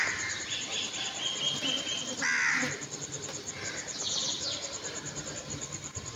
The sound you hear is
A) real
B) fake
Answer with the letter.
A